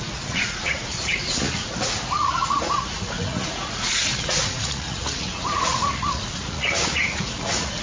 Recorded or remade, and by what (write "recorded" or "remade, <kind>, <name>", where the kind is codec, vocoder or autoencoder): remade, vocoder, Vocos